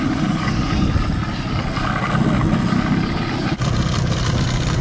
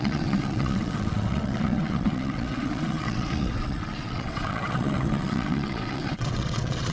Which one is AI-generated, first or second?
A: second